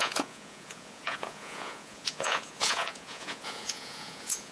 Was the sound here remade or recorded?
remade